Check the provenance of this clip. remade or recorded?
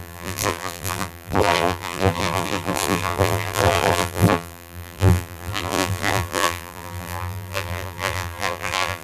remade